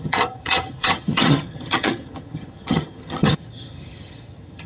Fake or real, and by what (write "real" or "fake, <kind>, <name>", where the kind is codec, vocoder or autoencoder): fake, vocoder, HiFi-GAN